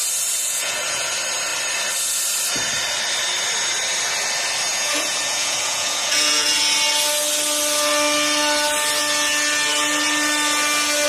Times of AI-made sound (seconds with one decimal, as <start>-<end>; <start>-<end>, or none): 0.4-1.1; 4.7-6.6